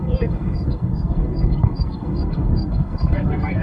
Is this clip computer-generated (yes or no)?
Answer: yes